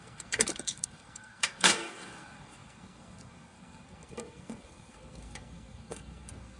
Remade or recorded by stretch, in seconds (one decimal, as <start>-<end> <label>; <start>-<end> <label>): 0.0-6.6 remade